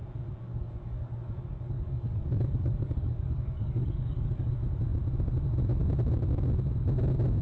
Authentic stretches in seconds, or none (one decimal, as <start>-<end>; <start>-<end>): 0.0-0.5; 4.5-7.4